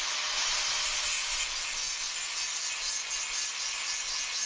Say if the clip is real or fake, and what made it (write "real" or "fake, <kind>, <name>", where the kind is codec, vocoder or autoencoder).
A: real